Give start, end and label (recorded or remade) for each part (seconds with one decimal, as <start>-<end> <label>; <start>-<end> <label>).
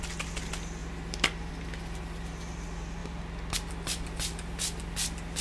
0.0-5.4 recorded